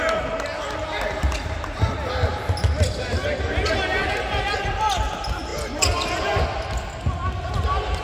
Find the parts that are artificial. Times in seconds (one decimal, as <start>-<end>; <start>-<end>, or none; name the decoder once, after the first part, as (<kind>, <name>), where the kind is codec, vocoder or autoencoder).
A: none